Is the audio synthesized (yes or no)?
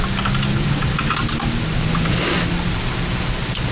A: no